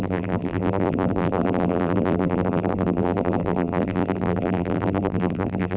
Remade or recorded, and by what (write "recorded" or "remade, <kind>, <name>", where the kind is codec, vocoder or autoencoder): remade, vocoder, BigVGAN v2